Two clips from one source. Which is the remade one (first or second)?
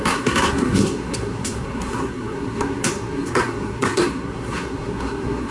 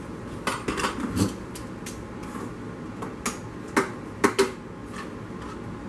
first